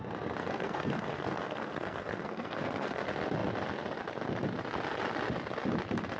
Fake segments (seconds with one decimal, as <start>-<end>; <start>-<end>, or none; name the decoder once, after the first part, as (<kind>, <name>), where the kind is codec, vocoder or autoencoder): 0.4-3.0 (codec, SNAC)